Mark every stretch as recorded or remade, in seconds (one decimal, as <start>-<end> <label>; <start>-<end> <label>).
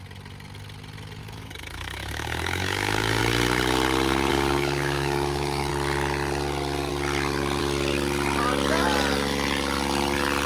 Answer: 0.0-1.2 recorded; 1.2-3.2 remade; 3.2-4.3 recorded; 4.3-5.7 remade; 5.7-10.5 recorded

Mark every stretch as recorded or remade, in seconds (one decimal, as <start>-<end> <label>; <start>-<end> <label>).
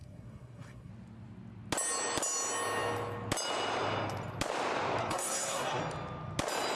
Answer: 0.0-0.9 remade; 0.9-5.0 recorded; 5.0-5.8 remade; 5.8-6.8 recorded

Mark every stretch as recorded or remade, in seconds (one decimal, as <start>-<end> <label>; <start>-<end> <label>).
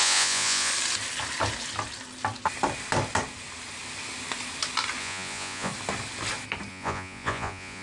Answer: 0.0-0.7 remade; 0.7-5.0 recorded; 5.0-5.7 remade; 5.7-6.7 recorded; 6.7-7.8 remade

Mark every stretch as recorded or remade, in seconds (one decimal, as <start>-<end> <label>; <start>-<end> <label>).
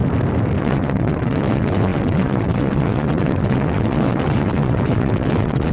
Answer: 0.0-0.6 recorded; 0.6-5.7 remade